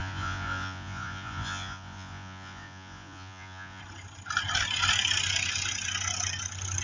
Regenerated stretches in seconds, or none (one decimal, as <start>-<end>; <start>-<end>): 0.0-3.8